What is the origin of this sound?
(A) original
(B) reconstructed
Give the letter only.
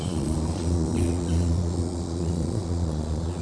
B